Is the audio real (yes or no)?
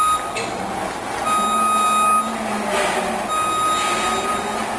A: yes